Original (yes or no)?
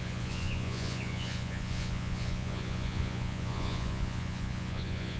no